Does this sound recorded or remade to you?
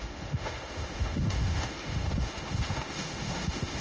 remade